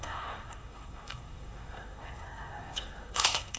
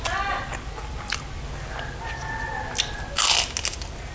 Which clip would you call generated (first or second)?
first